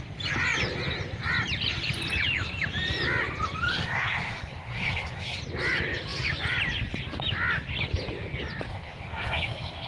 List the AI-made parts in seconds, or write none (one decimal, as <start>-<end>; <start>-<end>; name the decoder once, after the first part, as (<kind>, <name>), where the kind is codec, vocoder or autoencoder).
3.7-5.4 (codec, SNAC); 8.7-9.9